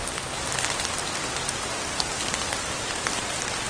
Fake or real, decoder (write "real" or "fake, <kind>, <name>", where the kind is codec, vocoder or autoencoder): real